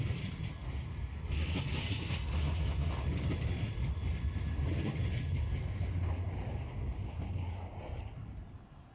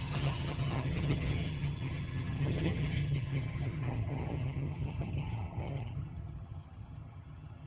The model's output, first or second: second